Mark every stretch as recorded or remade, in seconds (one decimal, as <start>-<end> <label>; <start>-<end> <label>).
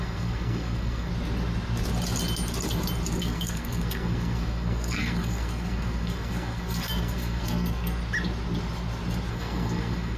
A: 0.0-1.1 remade; 1.1-3.2 recorded; 3.2-8.0 remade; 8.0-9.3 recorded; 9.3-10.2 remade